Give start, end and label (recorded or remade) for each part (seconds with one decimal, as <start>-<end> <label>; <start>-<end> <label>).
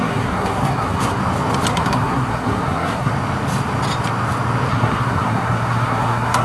0.0-1.2 remade; 1.2-1.7 recorded; 1.7-3.1 remade; 3.1-4.7 recorded; 4.7-6.4 remade